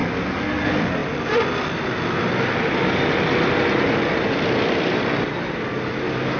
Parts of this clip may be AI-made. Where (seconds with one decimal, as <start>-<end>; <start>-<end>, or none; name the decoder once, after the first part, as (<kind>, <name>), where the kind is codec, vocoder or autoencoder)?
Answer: none